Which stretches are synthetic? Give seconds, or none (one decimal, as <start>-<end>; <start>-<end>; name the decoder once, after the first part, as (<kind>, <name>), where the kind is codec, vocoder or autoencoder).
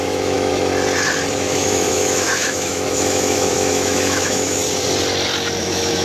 0.0-0.7 (autoencoder, DAC-VAE); 1.3-4.6; 5.6-6.0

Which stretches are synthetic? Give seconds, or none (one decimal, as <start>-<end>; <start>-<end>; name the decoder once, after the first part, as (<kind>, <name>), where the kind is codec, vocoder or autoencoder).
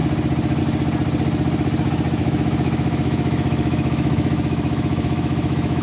2.2-5.8 (autoencoder, DAC-VAE)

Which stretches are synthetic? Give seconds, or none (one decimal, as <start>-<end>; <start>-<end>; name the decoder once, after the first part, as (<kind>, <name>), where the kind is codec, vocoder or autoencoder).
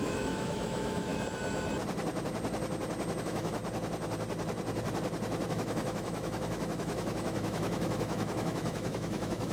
0.0-1.1 (autoencoder, DAC-VAE); 3.2-3.6; 5.5-9.5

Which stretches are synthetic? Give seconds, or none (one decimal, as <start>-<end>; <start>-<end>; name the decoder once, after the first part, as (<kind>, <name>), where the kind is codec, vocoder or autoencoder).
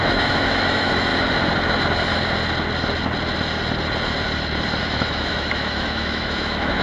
0.0-1.1 (autoencoder, DAC-VAE); 4.8-6.8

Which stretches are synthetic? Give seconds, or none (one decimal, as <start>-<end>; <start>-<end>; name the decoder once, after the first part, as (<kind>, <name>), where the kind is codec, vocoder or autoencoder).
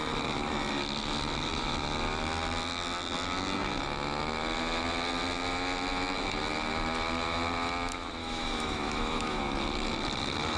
8.2-9.4 (autoencoder, DAC-VAE)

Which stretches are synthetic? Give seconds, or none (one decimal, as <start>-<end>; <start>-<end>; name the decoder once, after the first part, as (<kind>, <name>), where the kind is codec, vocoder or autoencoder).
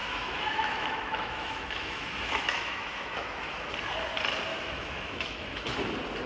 0.0-3.7 (autoencoder, DAC-VAE); 4.5-5.7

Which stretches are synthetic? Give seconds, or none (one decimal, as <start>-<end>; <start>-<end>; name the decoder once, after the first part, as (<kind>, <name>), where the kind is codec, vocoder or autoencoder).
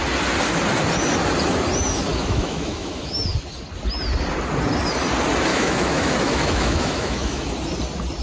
2.1-3.1 (autoencoder, DAC-VAE); 5.5-7.5